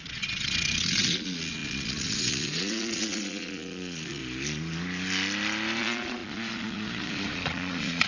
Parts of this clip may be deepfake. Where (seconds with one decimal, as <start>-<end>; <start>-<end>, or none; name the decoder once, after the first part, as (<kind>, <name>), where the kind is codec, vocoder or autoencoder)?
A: 0.0-4.2 (vocoder, Vocos); 5.8-8.1